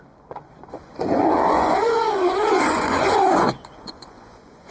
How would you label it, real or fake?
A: fake